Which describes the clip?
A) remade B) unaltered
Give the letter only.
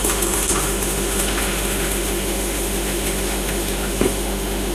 A